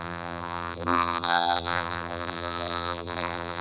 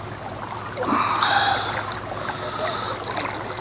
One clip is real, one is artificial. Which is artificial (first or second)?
first